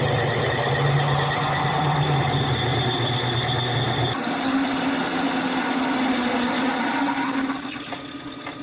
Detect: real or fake real